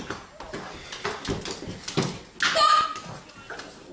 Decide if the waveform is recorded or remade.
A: recorded